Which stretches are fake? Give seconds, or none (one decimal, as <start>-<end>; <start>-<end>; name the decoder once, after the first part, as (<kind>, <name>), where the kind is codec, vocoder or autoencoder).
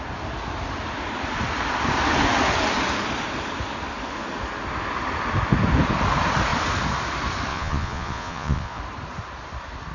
7.5-8.8 (vocoder, Vocos)